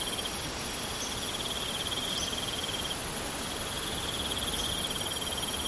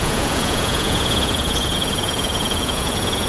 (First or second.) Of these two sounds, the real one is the first